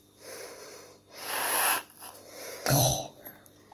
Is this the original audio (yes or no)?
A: yes